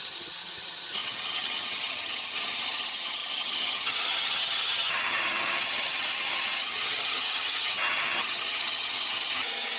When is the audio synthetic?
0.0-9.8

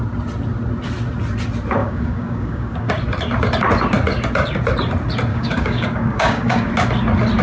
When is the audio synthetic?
1.8-2.9; 5.3-6.7

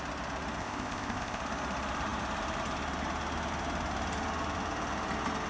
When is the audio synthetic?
0.6-1.4

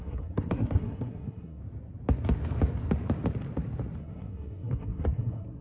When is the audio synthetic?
0.0-1.6; 4.0-5.6

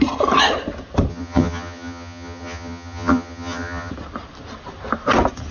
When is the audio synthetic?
1.1-3.9

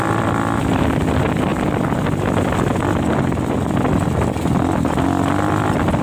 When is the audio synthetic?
none

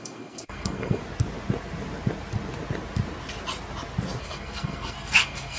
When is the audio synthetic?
0.0-1.0; 4.2-5.6

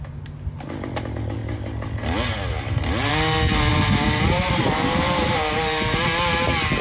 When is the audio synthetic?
3.7-6.0